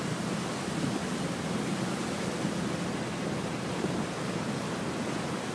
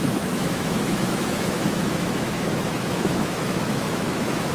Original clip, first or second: first